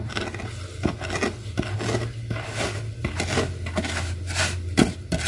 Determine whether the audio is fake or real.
real